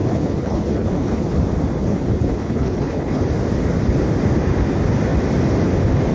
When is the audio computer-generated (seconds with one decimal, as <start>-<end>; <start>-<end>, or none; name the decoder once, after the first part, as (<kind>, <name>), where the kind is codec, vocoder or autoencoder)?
0.0-1.4 (codec, HILCodec); 1.8-3.2